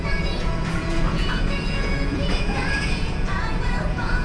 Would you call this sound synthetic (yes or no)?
yes